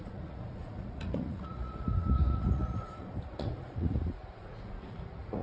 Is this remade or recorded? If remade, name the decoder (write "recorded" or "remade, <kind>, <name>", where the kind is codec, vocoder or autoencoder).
remade, vocoder, Vocos